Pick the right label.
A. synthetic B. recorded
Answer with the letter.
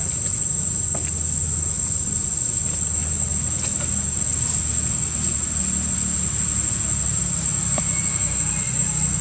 B